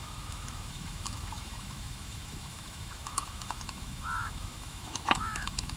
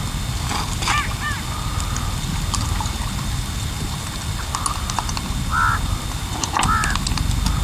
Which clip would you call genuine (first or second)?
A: second